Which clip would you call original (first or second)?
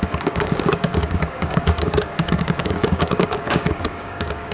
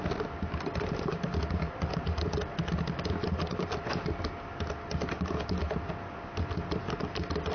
second